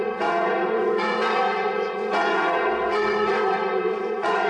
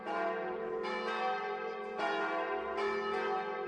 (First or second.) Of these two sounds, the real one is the second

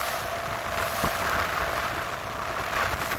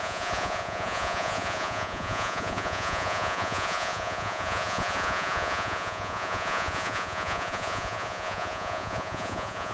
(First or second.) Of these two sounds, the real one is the first